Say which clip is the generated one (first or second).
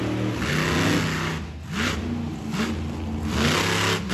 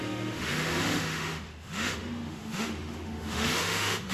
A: second